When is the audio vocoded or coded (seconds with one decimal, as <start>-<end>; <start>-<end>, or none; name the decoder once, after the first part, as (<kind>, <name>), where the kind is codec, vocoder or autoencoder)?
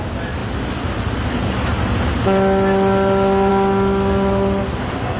none